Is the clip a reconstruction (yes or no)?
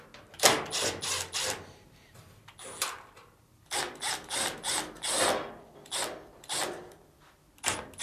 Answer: no